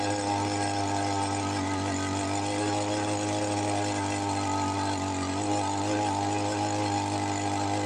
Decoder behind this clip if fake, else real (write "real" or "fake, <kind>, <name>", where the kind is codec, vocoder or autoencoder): real